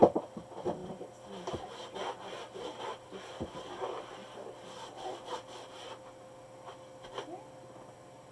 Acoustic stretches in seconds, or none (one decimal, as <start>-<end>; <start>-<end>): 0.0-8.3